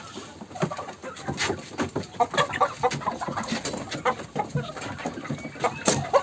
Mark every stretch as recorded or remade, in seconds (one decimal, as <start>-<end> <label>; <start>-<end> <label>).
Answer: 0.0-6.2 recorded